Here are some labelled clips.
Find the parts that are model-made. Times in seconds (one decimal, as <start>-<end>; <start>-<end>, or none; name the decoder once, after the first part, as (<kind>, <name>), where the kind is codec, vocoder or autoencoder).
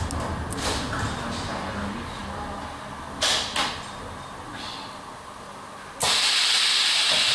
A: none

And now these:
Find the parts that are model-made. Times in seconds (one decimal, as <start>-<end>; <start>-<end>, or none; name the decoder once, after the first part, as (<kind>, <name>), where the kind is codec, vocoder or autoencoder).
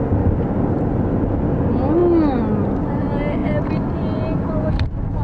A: none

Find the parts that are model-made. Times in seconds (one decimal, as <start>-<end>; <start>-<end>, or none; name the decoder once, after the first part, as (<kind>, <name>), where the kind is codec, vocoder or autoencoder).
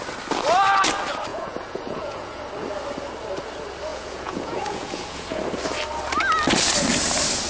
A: 1.3-2.4 (vocoder, Vocos); 3.9-5.4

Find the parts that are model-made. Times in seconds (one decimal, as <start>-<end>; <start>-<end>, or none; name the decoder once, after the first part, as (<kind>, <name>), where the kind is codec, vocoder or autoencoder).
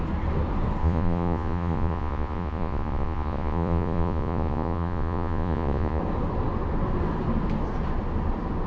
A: 0.8-6.0 (vocoder, Vocos)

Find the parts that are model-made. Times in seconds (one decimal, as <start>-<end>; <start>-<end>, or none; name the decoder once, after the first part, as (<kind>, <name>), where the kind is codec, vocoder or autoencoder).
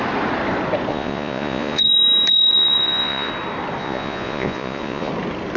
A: 0.9-1.9 (vocoder, Vocos); 2.5-3.3; 3.8-5.1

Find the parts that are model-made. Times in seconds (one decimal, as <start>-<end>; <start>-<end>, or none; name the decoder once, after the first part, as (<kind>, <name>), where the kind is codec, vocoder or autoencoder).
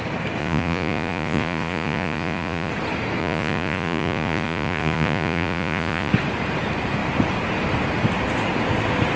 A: 0.4-2.7 (vocoder, Vocos); 3.2-6.1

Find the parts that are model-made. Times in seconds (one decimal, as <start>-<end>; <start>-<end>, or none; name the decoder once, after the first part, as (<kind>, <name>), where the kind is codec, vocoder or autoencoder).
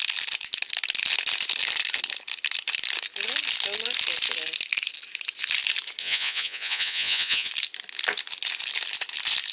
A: 6.0-7.5 (vocoder, Vocos)